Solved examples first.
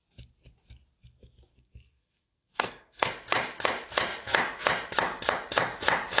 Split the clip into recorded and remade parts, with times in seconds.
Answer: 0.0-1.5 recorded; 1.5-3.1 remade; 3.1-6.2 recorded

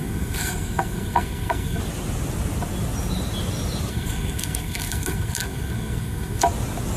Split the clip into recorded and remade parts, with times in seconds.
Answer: 0.0-1.8 remade; 1.8-3.9 recorded; 3.9-6.4 remade; 6.4-7.0 recorded

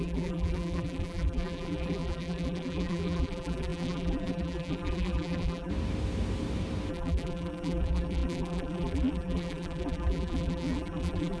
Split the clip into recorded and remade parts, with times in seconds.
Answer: 0.0-5.7 remade; 5.7-6.9 recorded; 6.9-11.4 remade

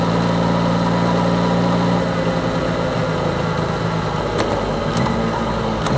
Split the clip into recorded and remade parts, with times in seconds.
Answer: 0.0-5.2 recorded; 5.2-6.0 remade

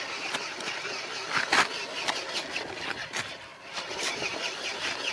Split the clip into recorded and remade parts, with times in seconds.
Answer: 0.0-3.5 recorded; 3.5-4.3 remade; 4.3-5.1 recorded